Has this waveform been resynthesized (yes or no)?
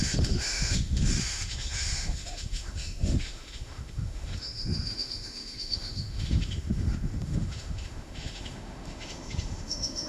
yes